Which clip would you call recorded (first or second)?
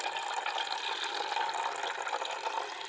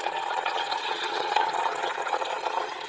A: first